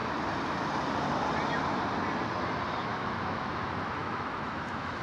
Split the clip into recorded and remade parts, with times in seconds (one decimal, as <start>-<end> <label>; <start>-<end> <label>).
0.0-2.9 recorded; 2.9-3.5 remade; 3.5-4.0 recorded; 4.0-5.0 remade